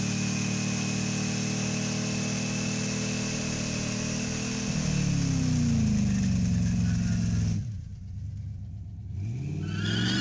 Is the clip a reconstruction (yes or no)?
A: no